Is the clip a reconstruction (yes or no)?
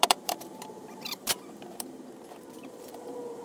yes